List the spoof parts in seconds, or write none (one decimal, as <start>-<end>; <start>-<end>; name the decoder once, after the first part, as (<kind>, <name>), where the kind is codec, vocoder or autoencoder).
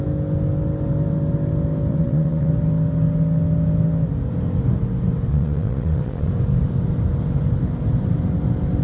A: 1.9-2.5 (vocoder, Vocos); 5.3-6.3